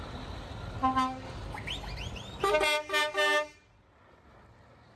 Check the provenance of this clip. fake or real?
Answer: real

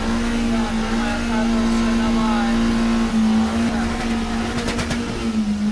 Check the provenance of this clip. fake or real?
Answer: real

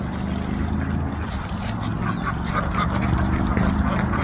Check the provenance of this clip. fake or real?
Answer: real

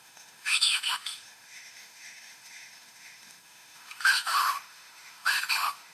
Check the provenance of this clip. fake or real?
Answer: fake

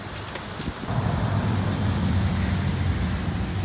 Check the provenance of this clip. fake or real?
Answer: real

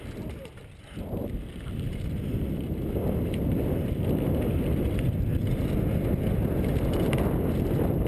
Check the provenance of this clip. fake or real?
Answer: real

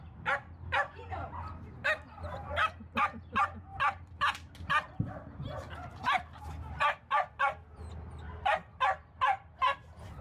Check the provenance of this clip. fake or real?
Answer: real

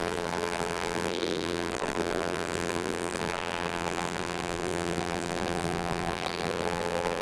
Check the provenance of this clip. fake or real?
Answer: fake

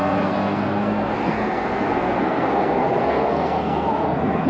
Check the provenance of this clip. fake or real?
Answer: fake